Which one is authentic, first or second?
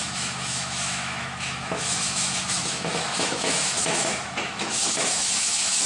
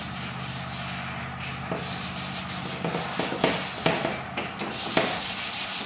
second